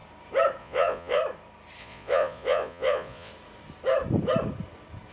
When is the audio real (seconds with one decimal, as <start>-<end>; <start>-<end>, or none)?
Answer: 0.0-0.6; 1.2-1.8; 3.3-5.1